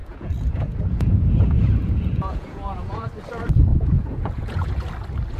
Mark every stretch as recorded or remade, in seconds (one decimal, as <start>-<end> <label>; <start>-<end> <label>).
0.0-3.1 remade; 3.1-3.7 recorded; 3.7-4.9 remade; 4.9-5.4 recorded